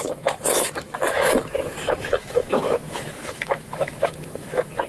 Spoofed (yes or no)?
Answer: yes